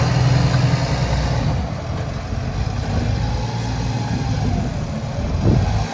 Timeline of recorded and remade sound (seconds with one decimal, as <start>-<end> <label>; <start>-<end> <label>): 0.0-5.9 recorded